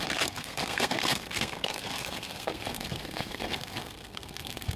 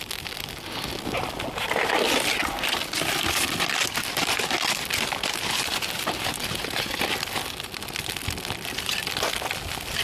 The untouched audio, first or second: second